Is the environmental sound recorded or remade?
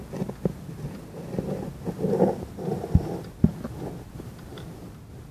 recorded